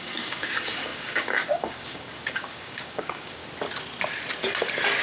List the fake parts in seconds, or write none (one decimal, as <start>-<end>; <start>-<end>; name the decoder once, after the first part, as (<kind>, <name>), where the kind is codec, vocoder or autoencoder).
0.0-3.4 (codec, DAC)